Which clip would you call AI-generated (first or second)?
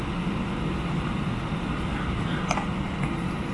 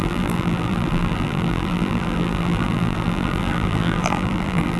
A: second